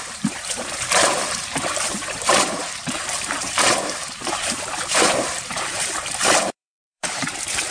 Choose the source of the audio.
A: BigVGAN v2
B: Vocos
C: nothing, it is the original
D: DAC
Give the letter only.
A